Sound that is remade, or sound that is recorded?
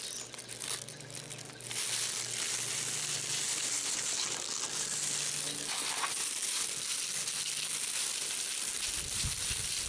recorded